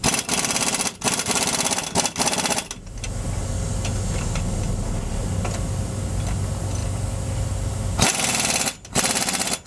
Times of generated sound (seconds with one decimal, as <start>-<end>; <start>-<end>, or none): none